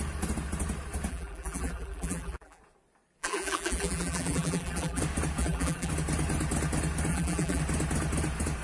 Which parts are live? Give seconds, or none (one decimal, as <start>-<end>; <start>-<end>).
0.0-1.1; 2.6-3.2; 5.0-5.4; 5.9-7.1; 7.6-8.6